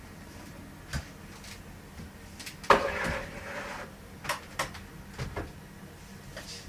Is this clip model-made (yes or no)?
no